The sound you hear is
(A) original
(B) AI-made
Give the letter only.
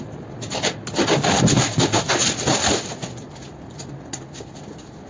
A